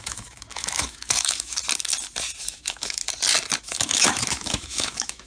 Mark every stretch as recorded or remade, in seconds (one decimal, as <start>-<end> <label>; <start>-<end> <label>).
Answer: 0.0-1.6 remade; 1.6-2.4 recorded; 2.4-3.0 remade; 3.0-3.6 recorded; 3.6-5.3 remade